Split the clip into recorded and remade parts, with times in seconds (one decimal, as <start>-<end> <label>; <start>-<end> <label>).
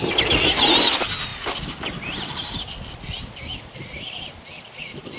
0.0-5.2 recorded